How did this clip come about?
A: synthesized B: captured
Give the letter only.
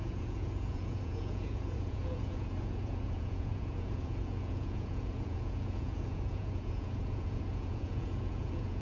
A